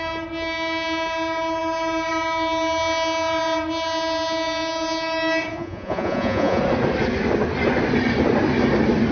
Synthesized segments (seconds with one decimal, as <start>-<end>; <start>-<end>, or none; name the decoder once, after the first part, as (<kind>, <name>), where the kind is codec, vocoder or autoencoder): 5.4-6.6 (vocoder, Vocos)